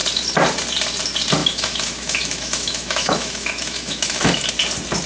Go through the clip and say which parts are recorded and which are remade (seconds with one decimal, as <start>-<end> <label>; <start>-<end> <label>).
0.0-1.4 recorded; 1.4-4.5 remade; 4.5-5.1 recorded